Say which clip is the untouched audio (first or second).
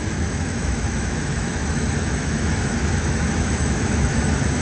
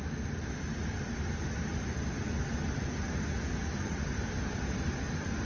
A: second